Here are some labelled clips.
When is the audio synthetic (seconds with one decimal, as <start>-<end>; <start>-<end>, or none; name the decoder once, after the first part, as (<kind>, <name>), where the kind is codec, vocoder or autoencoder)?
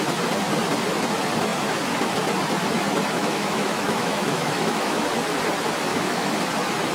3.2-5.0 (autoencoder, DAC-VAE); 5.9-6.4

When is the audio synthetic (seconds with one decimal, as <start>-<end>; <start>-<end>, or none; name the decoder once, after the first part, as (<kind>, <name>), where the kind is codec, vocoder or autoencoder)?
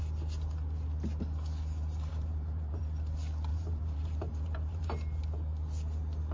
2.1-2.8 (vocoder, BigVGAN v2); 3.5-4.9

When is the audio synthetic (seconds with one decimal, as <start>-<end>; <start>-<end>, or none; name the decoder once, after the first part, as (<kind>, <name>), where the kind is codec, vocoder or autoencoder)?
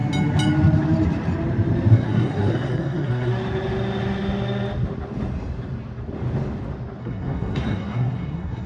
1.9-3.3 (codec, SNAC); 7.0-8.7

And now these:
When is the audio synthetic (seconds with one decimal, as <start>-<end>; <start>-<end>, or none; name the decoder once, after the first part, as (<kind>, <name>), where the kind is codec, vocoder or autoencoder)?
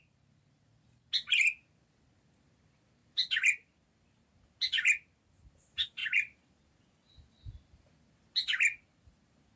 none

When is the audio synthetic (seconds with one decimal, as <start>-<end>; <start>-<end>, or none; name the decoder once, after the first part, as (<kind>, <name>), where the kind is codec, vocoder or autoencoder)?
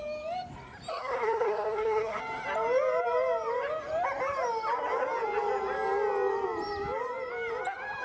0.9-2.2 (codec, SNAC)